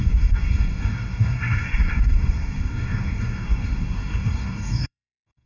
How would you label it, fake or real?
fake